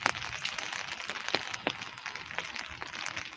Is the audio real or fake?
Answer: real